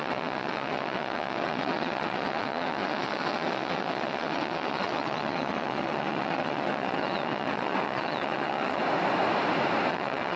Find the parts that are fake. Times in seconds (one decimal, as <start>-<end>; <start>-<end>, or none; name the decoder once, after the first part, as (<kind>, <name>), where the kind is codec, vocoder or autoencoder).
0.0-8.8 (vocoder, WaveNeXt); 9.9-10.4